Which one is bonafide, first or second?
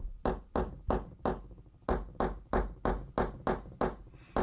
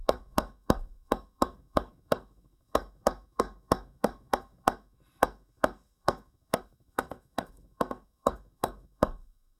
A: first